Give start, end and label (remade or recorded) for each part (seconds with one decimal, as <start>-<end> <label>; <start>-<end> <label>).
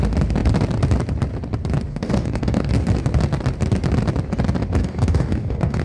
0.0-1.9 recorded; 1.9-2.7 remade; 2.7-4.8 recorded; 4.8-5.8 remade